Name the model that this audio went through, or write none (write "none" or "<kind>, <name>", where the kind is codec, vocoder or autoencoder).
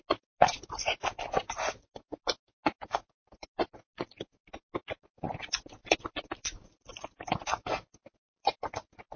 none